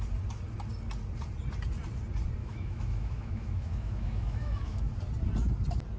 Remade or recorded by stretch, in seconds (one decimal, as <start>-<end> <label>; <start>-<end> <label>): 0.0-2.4 recorded; 2.4-4.9 remade; 4.9-6.0 recorded